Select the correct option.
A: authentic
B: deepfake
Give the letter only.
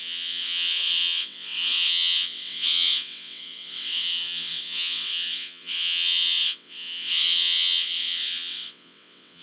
B